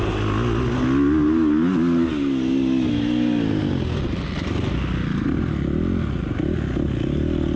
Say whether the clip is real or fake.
real